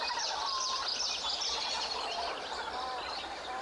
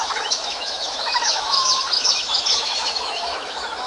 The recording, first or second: first